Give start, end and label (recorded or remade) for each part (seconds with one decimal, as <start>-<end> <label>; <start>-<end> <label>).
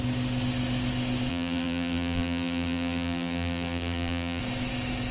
0.0-1.3 recorded; 1.3-4.4 remade; 4.4-5.1 recorded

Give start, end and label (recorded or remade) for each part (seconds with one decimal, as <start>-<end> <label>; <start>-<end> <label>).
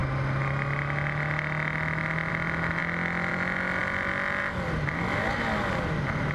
0.0-6.3 recorded